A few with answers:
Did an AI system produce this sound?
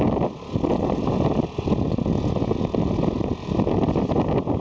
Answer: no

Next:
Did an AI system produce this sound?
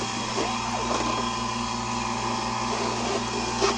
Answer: no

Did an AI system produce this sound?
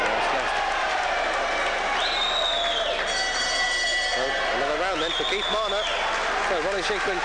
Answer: no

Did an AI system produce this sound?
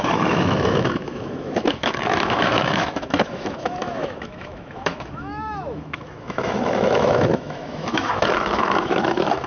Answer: yes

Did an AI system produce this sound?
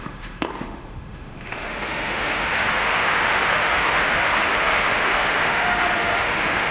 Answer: yes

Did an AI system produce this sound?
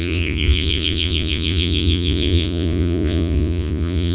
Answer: yes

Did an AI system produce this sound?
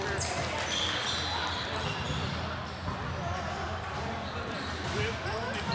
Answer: no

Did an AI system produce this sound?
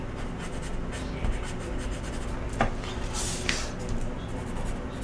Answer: no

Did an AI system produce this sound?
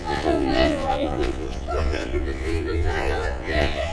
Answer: yes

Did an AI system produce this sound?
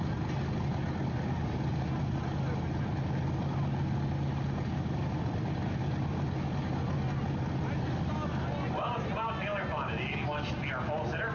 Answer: no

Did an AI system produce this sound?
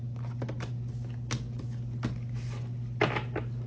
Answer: no